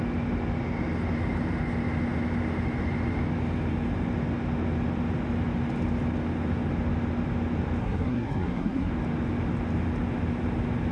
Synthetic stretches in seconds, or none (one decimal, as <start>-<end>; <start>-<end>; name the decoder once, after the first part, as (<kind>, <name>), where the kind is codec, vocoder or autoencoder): 7.8-8.9 (codec, SNAC)